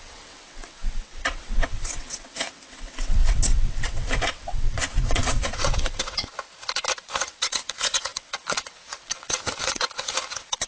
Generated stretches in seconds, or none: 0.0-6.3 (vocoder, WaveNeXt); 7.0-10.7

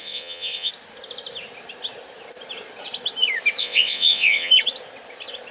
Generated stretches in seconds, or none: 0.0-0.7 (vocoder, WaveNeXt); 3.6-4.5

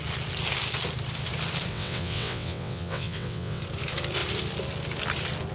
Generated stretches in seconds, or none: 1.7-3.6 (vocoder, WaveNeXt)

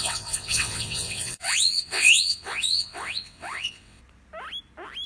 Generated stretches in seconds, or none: 0.0-4.0 (vocoder, WaveNeXt)

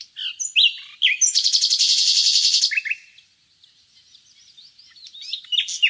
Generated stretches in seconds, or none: 1.8-2.6 (vocoder, WaveNeXt)

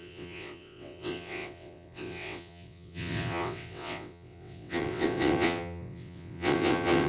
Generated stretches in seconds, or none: 0.0-7.1 (vocoder, WaveNeXt)